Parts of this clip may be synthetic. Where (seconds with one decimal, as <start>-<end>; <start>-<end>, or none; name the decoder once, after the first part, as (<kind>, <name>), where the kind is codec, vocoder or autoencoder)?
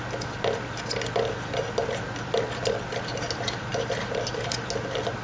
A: none